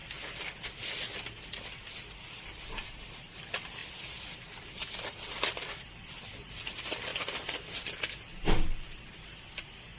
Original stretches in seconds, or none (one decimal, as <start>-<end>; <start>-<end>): 0.0-3.8; 6.5-7.1; 8.0-10.0